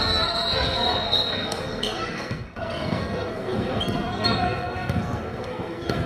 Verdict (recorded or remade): remade